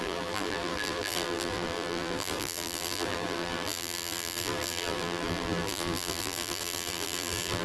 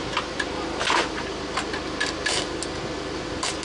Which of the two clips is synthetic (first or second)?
first